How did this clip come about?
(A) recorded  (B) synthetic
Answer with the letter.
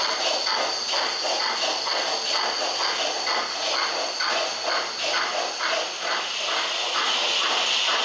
A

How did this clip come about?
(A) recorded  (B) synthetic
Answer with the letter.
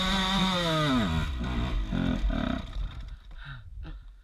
A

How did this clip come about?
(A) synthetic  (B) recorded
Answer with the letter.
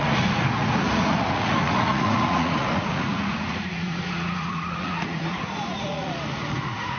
A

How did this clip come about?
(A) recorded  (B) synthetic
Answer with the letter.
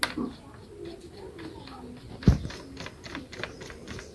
A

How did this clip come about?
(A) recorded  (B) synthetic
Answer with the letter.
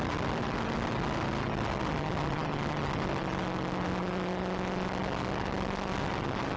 A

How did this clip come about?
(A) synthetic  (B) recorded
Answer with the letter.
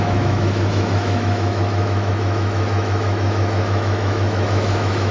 A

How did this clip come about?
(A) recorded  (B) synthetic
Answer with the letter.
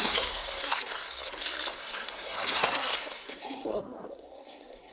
B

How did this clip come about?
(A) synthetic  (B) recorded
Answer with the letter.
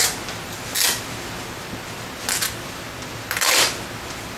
B